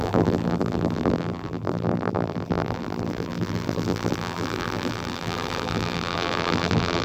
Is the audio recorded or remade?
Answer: remade